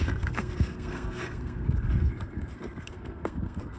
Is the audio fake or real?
fake